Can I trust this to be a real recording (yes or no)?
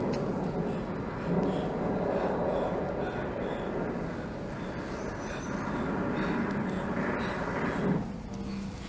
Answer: yes